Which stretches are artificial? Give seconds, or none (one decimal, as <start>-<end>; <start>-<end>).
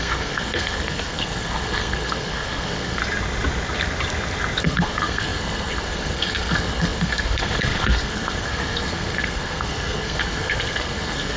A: 0.0-3.0; 4.6-11.4